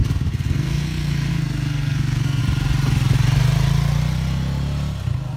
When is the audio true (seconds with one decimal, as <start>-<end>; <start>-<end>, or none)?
2.4-5.4